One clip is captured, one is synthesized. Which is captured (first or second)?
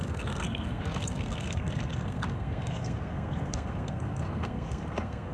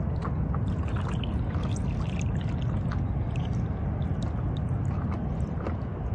second